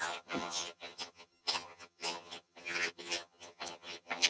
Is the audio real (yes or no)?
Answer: no